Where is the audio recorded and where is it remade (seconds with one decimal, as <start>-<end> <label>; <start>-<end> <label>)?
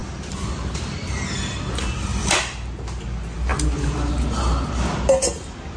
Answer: 0.0-1.6 remade; 1.6-2.1 recorded; 2.1-2.8 remade; 2.8-5.8 recorded